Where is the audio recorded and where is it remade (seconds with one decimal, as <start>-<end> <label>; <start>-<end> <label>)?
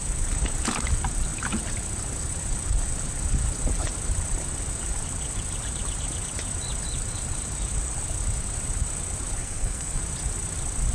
0.0-9.4 recorded; 9.4-10.0 remade; 10.0-10.9 recorded